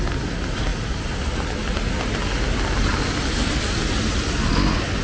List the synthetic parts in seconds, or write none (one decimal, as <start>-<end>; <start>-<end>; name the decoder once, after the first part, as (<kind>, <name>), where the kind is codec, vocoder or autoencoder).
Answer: none